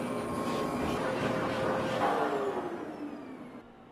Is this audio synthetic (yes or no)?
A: no